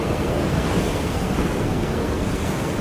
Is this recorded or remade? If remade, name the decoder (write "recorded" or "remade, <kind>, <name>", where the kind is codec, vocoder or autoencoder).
remade, codec, SNAC